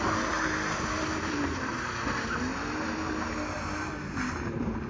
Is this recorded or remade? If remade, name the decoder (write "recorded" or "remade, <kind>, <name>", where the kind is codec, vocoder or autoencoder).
recorded